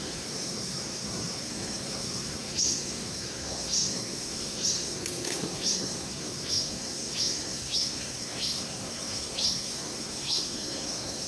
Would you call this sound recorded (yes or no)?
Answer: no